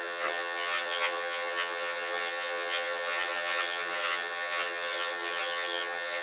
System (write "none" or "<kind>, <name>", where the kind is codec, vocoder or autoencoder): vocoder, HiFi-GAN